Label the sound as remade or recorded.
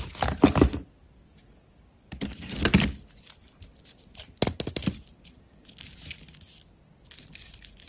recorded